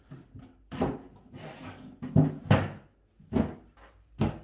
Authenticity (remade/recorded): recorded